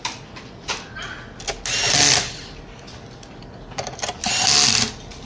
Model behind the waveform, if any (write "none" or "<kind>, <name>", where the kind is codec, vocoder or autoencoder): none